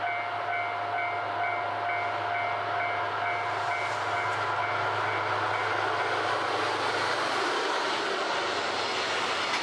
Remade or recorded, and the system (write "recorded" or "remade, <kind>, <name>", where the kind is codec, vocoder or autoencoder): recorded